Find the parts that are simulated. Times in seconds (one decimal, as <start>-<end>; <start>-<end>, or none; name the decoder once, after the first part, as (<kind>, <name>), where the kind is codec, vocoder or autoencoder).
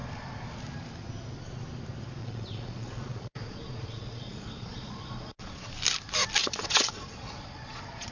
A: 2.2-5.7 (vocoder, Vocos); 6.4-8.1